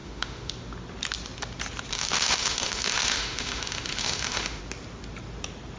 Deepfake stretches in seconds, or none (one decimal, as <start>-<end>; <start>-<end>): 0.0-0.5; 1.9-4.6